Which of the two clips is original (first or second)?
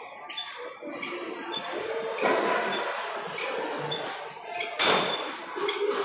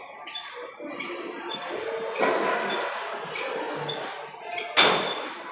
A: second